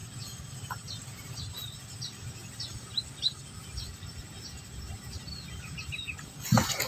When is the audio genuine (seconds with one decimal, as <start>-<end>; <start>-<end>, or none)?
0.0-6.9